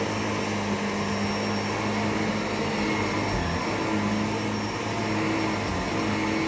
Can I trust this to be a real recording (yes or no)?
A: yes